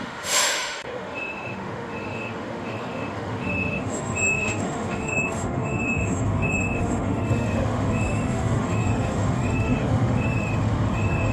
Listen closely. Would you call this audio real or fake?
fake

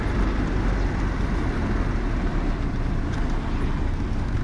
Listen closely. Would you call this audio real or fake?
real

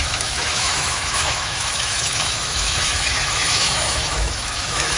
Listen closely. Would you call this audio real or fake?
fake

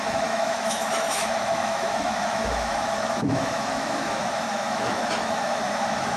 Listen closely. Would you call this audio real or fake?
fake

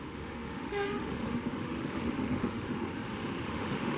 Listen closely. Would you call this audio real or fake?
fake